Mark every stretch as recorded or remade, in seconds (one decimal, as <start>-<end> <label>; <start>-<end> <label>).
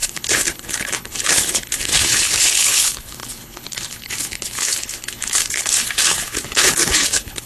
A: 0.0-7.5 remade